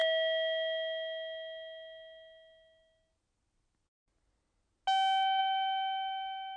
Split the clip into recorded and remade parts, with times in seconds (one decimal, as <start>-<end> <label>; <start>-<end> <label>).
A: 0.0-5.4 recorded; 5.4-6.6 remade